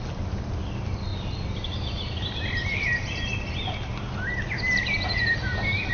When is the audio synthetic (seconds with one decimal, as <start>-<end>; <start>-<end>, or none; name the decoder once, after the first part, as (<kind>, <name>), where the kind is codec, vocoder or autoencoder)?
0.0-5.9 (vocoder, BigVGAN v2)

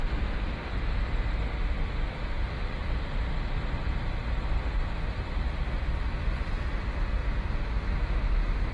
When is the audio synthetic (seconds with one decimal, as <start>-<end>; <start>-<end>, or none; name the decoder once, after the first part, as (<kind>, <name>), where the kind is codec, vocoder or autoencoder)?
0.0-7.2 (vocoder, BigVGAN v2)